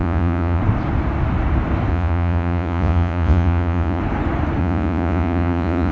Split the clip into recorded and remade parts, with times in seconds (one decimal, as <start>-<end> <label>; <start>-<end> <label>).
0.0-0.6 remade; 0.6-1.9 recorded; 1.9-4.0 remade; 4.0-4.6 recorded; 4.6-5.9 remade